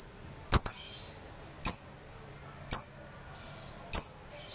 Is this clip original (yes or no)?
yes